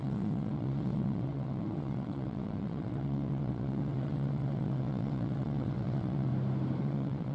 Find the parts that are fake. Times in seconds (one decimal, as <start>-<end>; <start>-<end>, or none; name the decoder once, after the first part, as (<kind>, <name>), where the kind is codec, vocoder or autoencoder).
0.0-6.3 (vocoder, WaveNeXt); 6.8-7.3